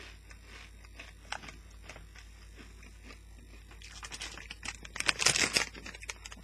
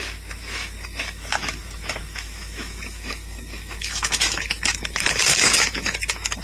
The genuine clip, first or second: first